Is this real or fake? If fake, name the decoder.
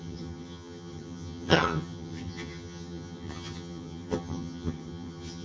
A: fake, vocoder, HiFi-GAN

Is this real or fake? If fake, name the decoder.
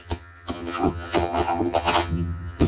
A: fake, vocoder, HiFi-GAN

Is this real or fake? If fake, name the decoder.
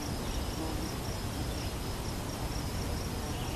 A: real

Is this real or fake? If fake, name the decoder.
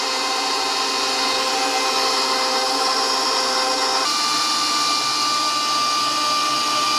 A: real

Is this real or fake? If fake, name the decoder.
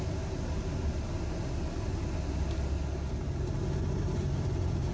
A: real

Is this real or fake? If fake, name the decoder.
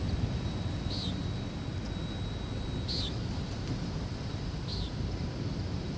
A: real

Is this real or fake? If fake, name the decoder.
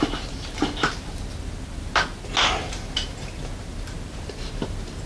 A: real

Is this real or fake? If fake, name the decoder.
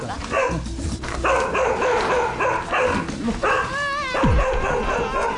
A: real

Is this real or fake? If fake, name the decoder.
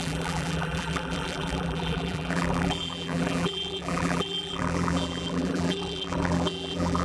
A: fake, vocoder, BigVGAN v2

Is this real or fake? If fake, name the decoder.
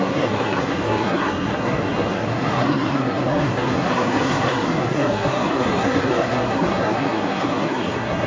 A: fake, codec, SNAC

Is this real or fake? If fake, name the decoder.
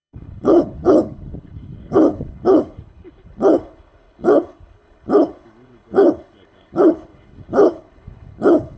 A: fake, codec, HILCodec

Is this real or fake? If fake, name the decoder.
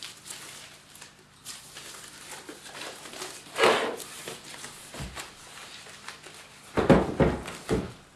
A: real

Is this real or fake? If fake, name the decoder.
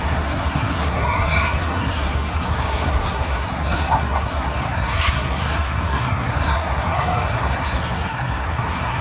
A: fake, codec, SNAC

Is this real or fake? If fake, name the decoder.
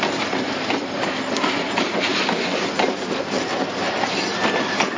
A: real